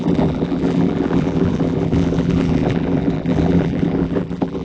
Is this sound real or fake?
fake